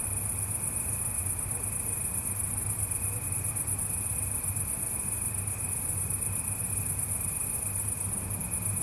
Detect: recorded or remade recorded